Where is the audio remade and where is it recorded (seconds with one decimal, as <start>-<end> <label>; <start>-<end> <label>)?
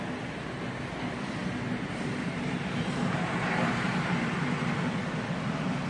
0.0-1.4 recorded; 1.4-4.9 remade; 4.9-5.9 recorded